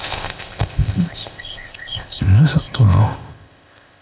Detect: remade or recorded remade